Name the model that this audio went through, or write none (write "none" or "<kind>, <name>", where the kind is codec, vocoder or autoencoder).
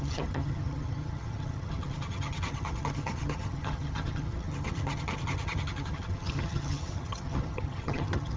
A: vocoder, HiFi-GAN